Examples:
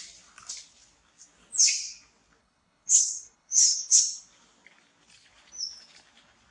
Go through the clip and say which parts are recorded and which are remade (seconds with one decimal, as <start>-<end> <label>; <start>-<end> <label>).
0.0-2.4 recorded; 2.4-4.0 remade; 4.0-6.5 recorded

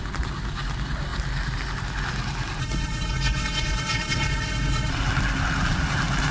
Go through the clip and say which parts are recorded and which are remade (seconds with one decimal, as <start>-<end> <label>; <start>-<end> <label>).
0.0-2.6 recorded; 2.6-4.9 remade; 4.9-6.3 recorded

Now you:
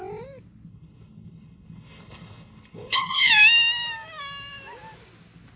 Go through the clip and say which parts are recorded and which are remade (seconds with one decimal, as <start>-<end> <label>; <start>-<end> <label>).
0.0-0.7 recorded; 0.7-3.3 remade; 3.3-5.6 recorded

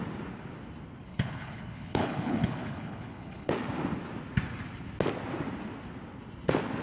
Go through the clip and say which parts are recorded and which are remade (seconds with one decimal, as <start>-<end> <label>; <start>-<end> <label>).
0.0-1.1 recorded; 1.1-3.5 remade; 3.5-6.8 recorded